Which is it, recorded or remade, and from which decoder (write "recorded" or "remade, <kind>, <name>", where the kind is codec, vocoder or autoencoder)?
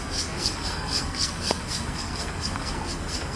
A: remade, codec, SNAC